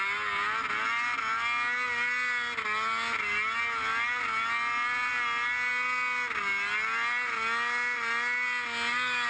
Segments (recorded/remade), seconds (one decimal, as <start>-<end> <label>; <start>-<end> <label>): 0.0-9.3 recorded